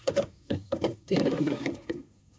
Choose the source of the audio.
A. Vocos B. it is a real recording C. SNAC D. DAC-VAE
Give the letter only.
C